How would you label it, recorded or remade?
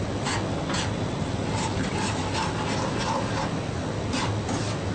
recorded